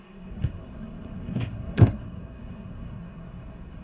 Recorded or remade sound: remade